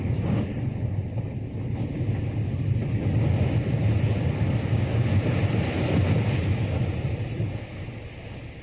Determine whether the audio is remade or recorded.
recorded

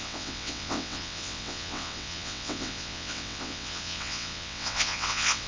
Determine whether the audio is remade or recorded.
remade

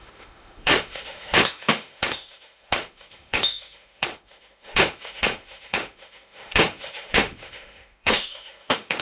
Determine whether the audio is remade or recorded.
remade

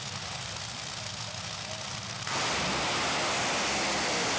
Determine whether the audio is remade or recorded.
recorded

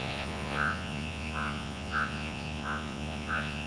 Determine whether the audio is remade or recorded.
remade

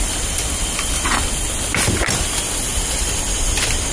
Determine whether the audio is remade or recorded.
recorded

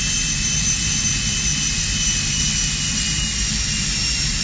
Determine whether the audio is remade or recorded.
remade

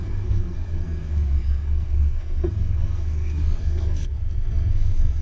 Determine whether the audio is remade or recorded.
remade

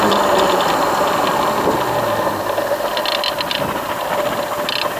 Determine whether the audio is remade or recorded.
recorded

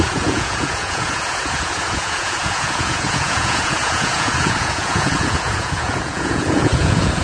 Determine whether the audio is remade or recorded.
remade